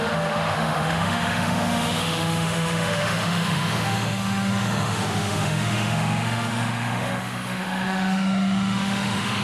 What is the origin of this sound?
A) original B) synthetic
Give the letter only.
B